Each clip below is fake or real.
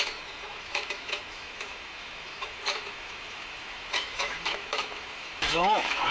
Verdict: fake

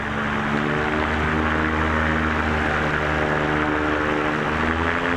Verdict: real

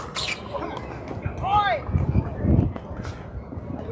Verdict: real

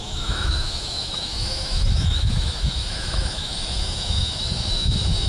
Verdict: fake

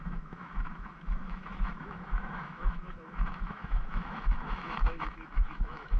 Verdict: fake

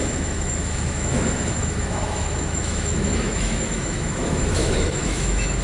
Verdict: fake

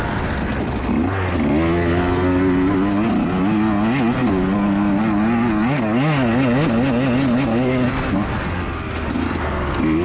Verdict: real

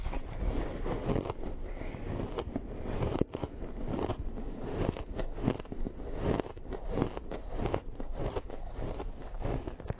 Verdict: real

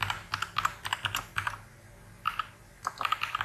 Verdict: real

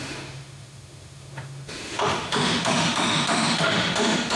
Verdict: fake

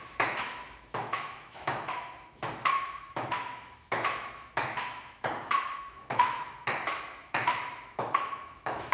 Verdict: fake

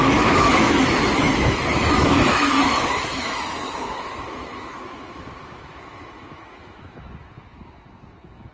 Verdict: fake